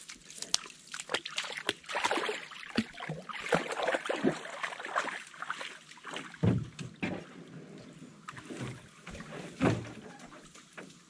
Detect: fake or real real